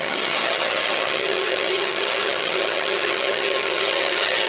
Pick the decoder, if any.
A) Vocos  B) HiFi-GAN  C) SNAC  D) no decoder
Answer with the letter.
B